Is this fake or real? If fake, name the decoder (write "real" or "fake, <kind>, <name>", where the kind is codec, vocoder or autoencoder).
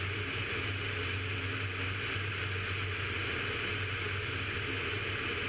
real